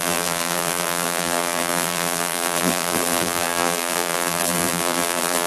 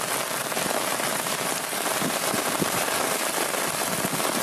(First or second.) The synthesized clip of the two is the first